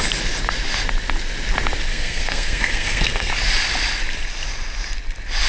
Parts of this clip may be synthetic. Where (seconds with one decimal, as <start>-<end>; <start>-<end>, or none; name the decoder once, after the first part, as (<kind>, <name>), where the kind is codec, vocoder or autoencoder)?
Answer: 1.9-3.3 (codec, SNAC)